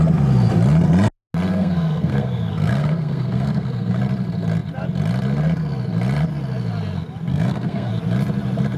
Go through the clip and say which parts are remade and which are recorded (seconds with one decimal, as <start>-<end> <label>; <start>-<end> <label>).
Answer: 0.0-1.5 recorded; 1.5-4.0 remade; 4.0-7.3 recorded; 7.3-7.9 remade; 7.9-8.8 recorded